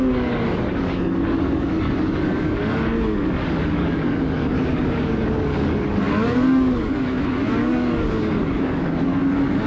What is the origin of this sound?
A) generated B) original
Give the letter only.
A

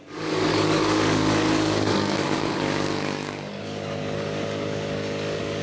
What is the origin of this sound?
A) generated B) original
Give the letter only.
A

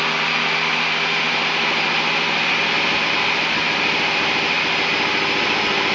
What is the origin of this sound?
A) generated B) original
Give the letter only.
B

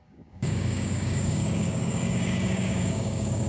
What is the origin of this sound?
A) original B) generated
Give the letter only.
B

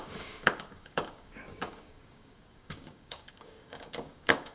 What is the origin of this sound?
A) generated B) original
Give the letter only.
A